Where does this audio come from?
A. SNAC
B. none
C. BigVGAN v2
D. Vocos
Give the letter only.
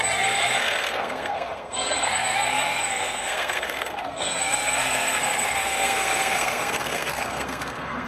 A